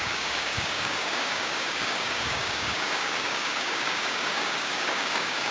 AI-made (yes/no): yes